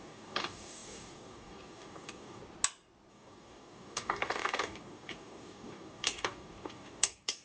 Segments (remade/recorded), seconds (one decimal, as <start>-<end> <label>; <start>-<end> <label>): 0.0-2.4 remade; 2.4-3.1 recorded; 3.1-7.4 remade